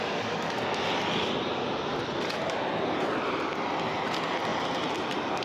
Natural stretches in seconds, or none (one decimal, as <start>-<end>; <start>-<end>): 0.0-4.5